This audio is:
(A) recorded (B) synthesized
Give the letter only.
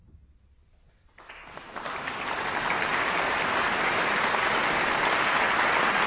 A